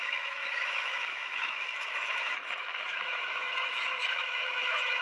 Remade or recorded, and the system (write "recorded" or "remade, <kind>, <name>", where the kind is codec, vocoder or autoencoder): remade, autoencoder, DAC-VAE